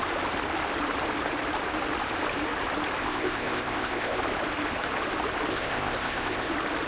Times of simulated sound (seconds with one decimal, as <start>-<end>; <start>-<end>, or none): 3.0-4.2; 5.5-6.5